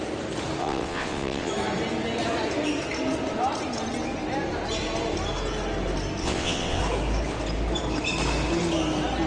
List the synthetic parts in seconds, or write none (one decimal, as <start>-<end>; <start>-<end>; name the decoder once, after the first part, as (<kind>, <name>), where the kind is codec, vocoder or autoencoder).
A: 0.6-1.5 (vocoder, WaveNeXt); 6.2-6.8